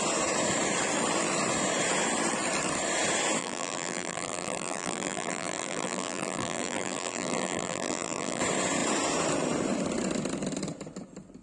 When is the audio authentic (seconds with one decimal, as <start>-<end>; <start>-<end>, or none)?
0.0-3.4; 8.4-11.4